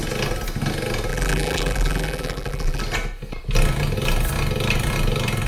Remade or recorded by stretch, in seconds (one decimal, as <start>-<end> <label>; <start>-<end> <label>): 0.0-1.1 recorded; 1.1-2.8 remade; 2.8-5.5 recorded